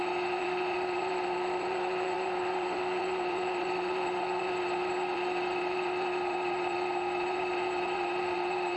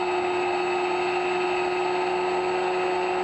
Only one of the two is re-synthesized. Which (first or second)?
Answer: first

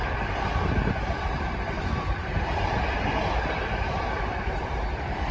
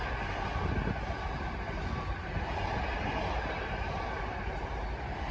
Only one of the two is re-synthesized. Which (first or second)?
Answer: first